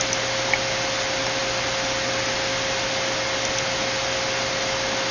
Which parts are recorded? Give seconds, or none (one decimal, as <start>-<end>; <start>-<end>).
0.0-5.1